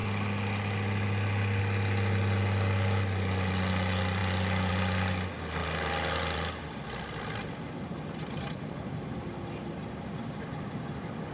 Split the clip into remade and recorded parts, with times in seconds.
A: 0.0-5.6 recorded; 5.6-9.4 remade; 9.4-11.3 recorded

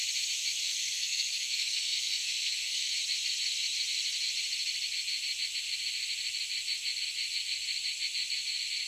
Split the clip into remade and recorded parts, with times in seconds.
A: 0.0-0.6 recorded; 0.6-2.9 remade; 2.9-8.9 recorded

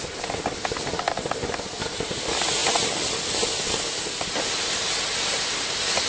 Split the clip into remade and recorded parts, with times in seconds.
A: 0.0-6.1 recorded

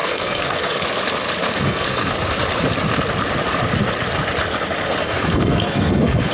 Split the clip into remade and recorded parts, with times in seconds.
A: 0.0-0.8 remade; 0.8-1.5 recorded; 1.5-2.1 remade; 2.1-5.0 recorded; 5.0-6.3 remade